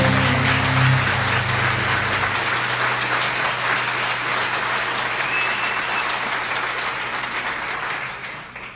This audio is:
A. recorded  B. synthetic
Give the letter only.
A